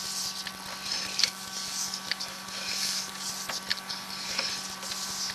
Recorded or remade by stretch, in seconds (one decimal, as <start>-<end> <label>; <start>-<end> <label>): 0.0-1.2 recorded; 1.2-3.3 remade; 3.3-3.7 recorded; 3.7-4.5 remade; 4.5-5.3 recorded